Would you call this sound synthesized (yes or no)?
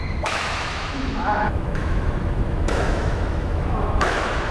yes